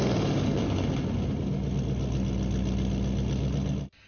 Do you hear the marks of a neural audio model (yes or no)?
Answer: no